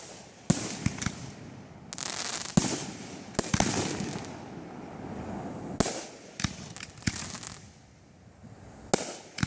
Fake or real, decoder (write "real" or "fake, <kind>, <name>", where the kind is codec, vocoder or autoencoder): real